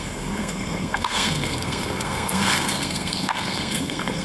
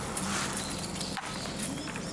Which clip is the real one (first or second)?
second